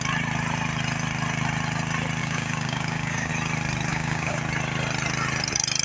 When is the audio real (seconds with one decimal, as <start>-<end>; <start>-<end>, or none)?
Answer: 0.0-2.2; 3.3-3.9; 4.4-5.8